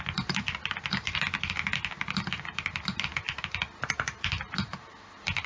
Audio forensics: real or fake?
real